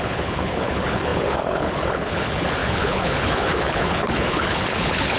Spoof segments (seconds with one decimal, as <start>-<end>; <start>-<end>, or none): 0.0-5.2